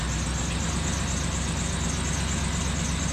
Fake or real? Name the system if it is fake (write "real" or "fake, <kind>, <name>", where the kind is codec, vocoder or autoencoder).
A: real